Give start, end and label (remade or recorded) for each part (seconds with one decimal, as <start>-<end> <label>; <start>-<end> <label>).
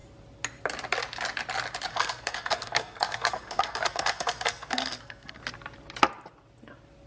0.0-1.9 recorded; 1.9-5.4 remade; 5.4-7.1 recorded